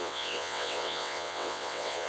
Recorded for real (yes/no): no